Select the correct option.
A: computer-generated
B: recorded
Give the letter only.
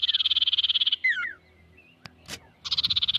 B